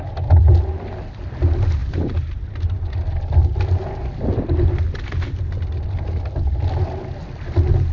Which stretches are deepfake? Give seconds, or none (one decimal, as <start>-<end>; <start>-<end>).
none